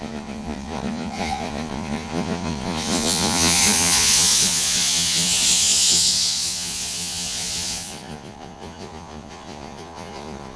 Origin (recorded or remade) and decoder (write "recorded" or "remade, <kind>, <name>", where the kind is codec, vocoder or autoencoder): remade, vocoder, Vocos